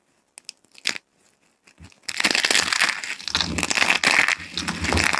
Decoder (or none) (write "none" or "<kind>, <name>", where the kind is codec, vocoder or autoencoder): none